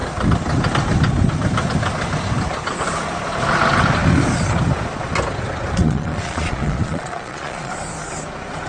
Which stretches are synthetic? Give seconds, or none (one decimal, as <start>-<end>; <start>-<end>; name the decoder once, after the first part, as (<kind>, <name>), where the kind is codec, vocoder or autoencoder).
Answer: 5.8-7.7 (vocoder, Vocos)

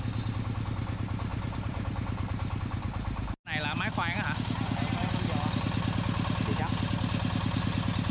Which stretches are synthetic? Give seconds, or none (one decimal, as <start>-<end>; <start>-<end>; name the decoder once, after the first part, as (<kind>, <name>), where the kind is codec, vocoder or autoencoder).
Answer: 1.3-2.6 (vocoder, BigVGAN v2)

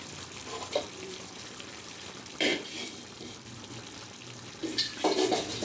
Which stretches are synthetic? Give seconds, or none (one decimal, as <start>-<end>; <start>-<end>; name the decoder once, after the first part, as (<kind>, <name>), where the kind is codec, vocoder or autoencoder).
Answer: 0.0-4.6 (vocoder, BigVGAN v2)